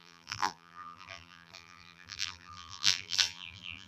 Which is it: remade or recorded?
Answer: remade